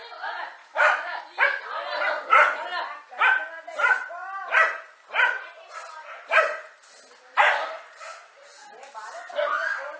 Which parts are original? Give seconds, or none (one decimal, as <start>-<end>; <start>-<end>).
0.0-0.6; 1.2-10.0